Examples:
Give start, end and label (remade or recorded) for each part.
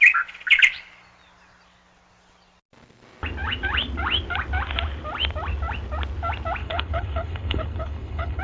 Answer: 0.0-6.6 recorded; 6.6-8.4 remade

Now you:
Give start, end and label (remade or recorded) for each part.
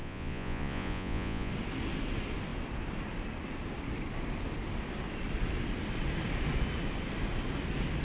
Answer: 0.0-1.5 remade; 1.5-8.0 recorded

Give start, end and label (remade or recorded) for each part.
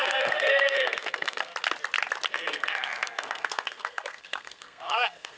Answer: 0.0-1.5 remade; 1.5-2.3 recorded; 2.3-5.4 remade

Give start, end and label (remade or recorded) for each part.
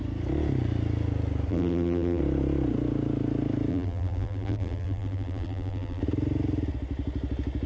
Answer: 0.0-1.5 recorded; 1.5-2.2 remade; 2.2-3.7 recorded; 3.7-6.0 remade; 6.0-7.7 recorded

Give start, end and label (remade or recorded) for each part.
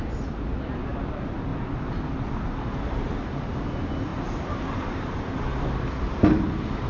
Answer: 0.0-1.5 recorded; 1.5-2.1 remade; 2.1-4.1 recorded; 4.1-5.1 remade; 5.1-6.9 recorded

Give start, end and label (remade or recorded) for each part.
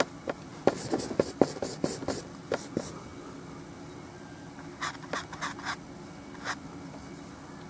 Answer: 0.0-7.7 recorded